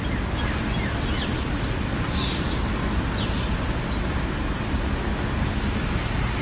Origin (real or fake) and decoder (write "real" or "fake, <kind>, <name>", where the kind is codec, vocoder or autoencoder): real